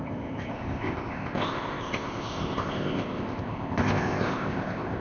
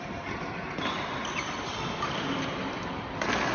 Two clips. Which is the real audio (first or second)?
second